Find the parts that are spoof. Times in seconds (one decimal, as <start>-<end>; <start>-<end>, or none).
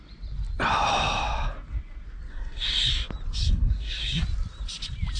2.3-2.9; 3.4-4.2